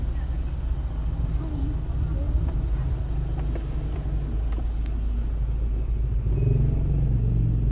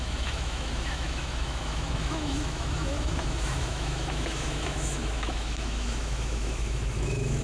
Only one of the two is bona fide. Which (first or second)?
first